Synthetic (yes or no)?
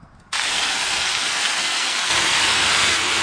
yes